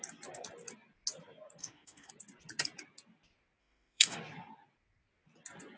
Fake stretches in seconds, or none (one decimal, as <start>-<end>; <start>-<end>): 1.6-2.1; 3.6-4.2